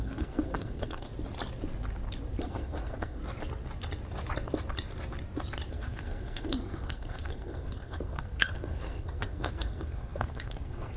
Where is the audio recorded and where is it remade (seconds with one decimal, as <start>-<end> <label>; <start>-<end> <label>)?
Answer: 0.0-1.1 remade; 1.1-2.4 recorded; 2.4-3.2 remade; 3.2-5.7 recorded; 5.7-11.0 remade